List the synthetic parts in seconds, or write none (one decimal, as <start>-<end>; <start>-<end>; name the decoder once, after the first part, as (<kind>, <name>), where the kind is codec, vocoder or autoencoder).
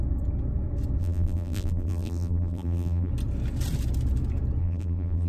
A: 1.0-3.1 (vocoder, BigVGAN v2); 4.6-5.3